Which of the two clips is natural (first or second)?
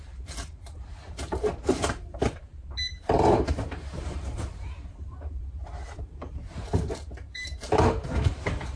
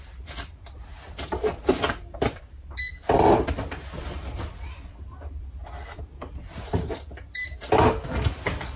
second